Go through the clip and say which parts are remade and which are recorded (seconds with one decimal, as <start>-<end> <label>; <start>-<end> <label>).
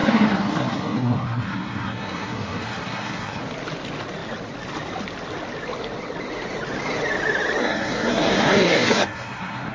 0.0-3.4 remade; 3.4-7.6 recorded; 7.6-9.7 remade